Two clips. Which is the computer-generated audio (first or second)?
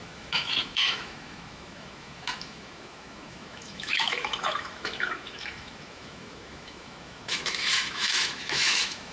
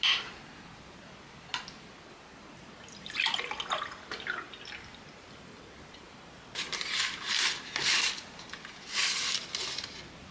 first